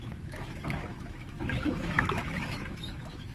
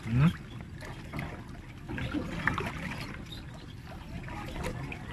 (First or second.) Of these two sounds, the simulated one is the first